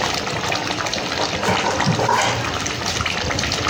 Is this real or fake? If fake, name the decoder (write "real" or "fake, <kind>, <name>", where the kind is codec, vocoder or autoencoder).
real